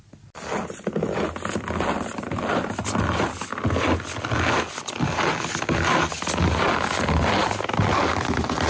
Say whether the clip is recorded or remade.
recorded